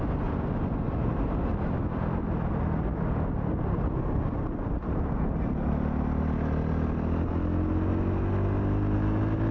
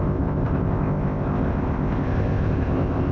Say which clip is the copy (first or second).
second